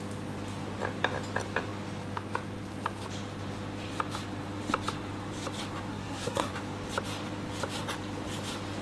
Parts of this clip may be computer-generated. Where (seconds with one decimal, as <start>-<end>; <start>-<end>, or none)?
5.9-6.5